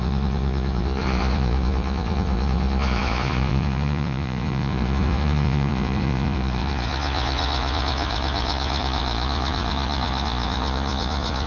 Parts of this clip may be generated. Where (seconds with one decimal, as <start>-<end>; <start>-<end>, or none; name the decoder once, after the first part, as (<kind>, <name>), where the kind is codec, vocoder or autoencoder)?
0.0-11.5 (vocoder, Vocos)